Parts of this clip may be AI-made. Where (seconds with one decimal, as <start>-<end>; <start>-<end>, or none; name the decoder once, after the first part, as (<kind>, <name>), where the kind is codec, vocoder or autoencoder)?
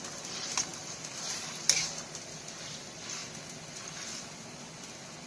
0.0-3.2 (vocoder, BigVGAN v2)